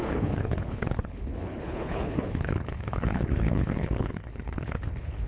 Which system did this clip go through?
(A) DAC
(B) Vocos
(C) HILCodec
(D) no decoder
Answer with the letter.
C